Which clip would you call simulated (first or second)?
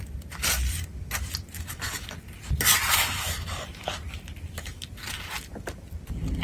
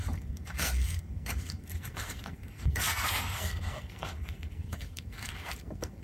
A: second